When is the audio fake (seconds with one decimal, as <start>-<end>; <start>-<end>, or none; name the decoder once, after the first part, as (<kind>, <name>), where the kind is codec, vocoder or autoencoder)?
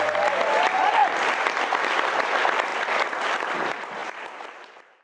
none